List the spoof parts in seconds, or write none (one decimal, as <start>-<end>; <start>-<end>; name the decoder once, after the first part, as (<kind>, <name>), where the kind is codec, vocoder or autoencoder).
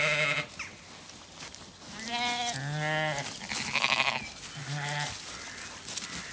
none